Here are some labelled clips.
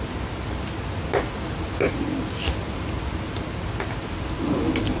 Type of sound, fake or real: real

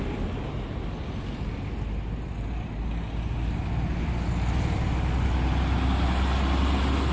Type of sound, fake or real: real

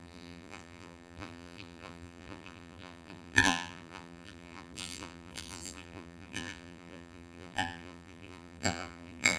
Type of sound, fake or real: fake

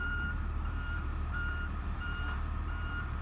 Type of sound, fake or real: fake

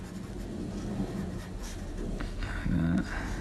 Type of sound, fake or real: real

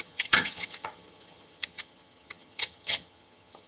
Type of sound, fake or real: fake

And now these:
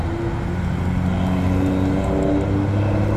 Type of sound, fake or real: real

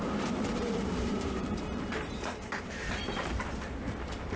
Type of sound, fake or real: fake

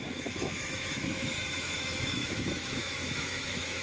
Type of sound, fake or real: fake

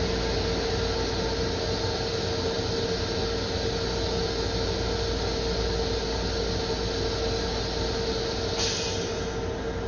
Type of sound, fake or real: real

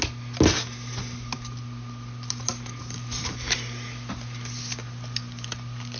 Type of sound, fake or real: real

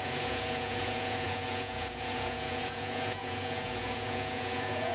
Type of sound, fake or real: fake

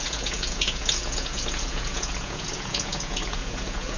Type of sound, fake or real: fake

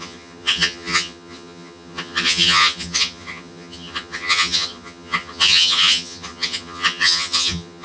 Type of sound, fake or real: fake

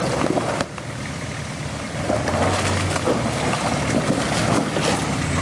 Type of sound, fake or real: real